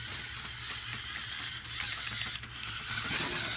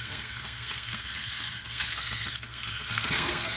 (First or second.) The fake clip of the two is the second